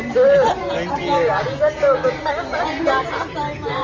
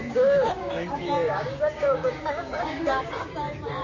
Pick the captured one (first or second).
first